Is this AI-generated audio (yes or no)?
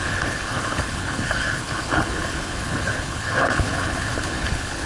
yes